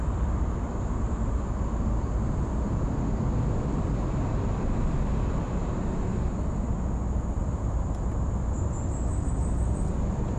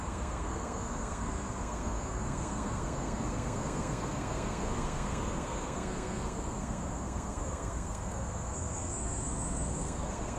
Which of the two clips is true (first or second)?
first